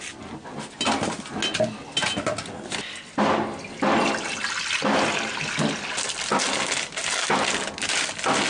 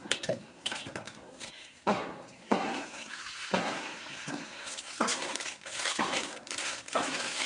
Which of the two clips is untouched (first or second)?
first